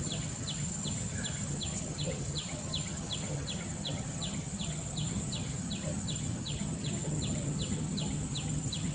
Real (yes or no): no